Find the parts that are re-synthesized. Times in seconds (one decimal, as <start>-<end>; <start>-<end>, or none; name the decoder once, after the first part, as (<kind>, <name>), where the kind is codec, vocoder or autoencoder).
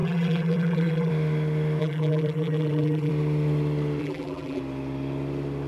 0.0-1.1 (vocoder, BigVGAN v2); 1.8-3.1; 4.0-4.6